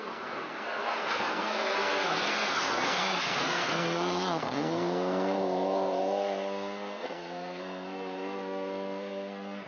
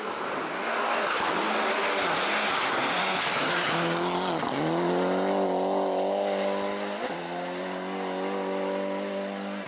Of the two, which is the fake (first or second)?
first